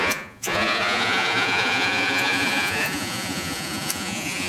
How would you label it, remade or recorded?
remade